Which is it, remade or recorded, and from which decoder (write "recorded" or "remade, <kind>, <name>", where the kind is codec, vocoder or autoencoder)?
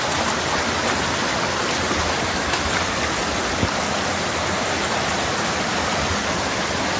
recorded